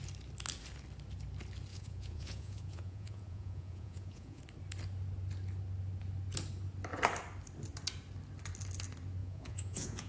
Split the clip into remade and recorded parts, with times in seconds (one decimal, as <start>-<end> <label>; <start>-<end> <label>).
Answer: 0.0-1.7 recorded; 1.7-4.4 remade; 4.4-9.2 recorded; 9.2-10.1 remade